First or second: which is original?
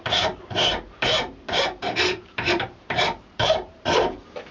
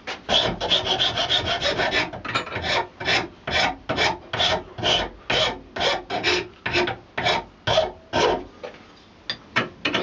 second